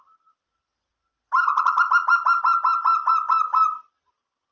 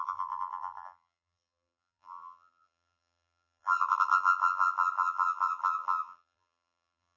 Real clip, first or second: first